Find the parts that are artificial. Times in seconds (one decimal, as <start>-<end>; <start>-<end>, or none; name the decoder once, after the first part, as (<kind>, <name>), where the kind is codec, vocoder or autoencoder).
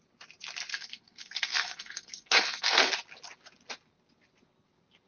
0.7-2.9 (codec, SNAC)